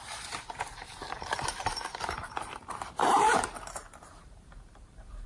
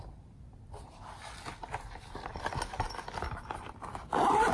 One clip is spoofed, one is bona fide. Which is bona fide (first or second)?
second